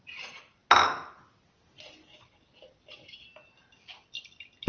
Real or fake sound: real